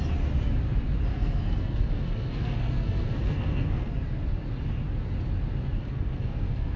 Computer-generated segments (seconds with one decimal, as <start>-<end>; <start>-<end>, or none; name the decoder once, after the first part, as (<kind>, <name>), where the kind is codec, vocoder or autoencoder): 1.1-3.9 (codec, SNAC); 5.8-6.8